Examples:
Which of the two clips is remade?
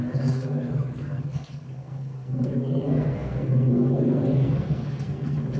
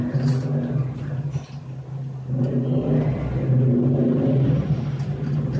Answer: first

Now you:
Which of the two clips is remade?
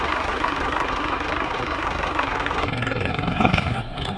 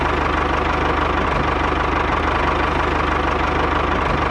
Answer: first